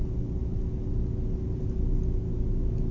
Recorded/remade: recorded